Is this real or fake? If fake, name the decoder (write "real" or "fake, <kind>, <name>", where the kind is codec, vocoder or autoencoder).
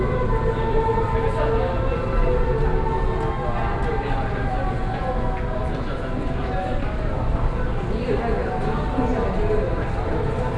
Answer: real